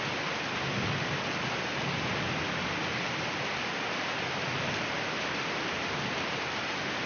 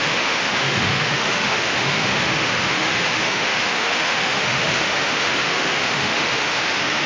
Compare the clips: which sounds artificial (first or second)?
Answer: second